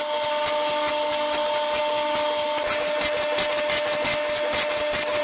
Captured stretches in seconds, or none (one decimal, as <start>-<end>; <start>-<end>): 0.0-5.2